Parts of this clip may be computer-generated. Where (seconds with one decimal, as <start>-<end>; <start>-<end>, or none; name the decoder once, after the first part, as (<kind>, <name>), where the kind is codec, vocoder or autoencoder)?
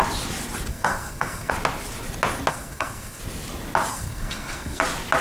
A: 0.7-1.5 (codec, SNAC); 2.5-3.2; 3.9-4.8